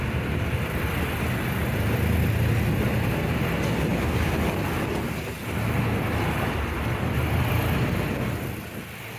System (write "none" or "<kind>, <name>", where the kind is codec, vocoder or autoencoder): none